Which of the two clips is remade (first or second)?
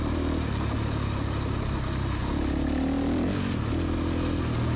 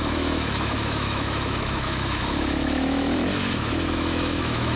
second